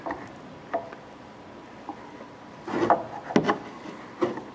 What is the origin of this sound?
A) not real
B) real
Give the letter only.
B